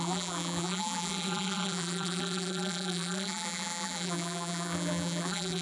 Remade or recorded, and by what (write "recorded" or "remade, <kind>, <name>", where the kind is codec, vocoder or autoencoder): remade, vocoder, BigVGAN v2